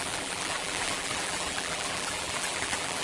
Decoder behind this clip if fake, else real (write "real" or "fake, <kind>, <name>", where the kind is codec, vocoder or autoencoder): fake, vocoder, BigVGAN v2